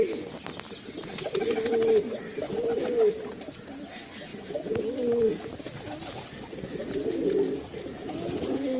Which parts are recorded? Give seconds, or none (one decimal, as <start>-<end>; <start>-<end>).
0.0-8.8